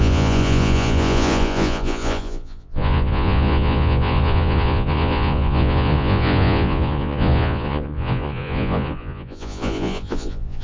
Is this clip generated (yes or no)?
yes